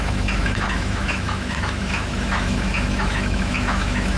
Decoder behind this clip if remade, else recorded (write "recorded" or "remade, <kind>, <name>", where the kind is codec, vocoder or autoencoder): remade, autoencoder, DAC-VAE